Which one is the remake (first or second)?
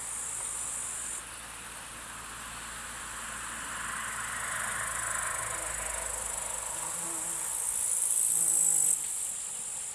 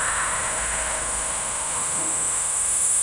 second